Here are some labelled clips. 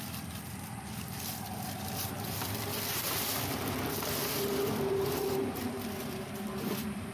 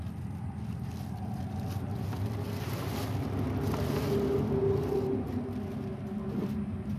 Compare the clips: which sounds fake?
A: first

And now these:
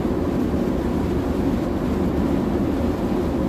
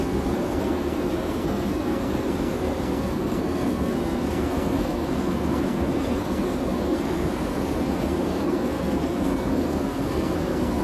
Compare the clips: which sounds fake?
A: second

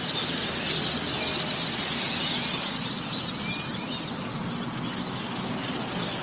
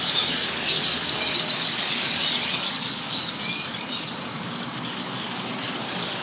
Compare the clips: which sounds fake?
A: second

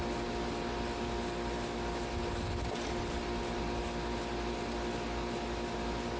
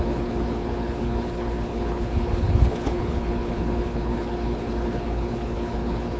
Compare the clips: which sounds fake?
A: second